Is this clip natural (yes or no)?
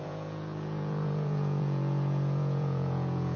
no